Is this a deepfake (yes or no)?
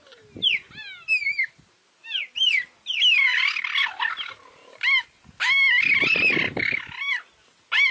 no